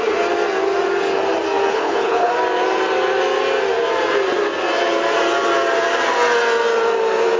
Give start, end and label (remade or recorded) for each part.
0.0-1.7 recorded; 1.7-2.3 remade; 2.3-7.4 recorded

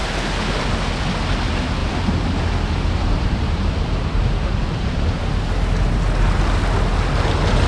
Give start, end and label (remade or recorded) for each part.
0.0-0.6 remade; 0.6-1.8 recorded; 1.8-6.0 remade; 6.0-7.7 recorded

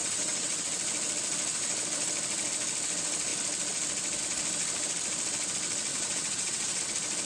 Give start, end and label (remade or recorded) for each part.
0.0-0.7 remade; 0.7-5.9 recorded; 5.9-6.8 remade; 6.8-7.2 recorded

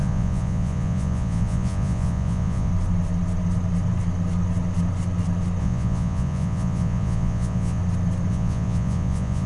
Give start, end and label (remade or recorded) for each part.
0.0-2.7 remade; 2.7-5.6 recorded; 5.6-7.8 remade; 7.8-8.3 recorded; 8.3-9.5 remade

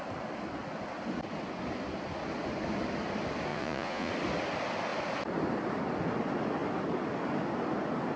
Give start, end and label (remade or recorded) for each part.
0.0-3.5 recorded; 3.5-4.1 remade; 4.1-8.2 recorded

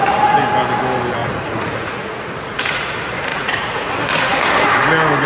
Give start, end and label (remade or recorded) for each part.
0.0-1.2 recorded; 1.2-2.9 remade; 2.9-3.3 recorded; 3.3-3.9 remade; 3.9-5.3 recorded